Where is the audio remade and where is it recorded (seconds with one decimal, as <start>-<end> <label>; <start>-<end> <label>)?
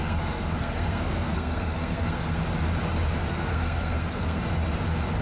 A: 0.0-2.4 remade; 2.4-3.3 recorded; 3.3-4.4 remade; 4.4-5.2 recorded